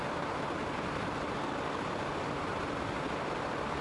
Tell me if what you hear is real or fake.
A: real